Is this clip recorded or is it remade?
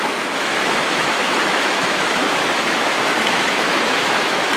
remade